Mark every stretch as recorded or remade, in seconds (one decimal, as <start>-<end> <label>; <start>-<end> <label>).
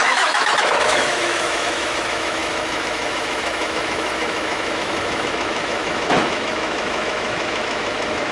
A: 0.0-8.3 remade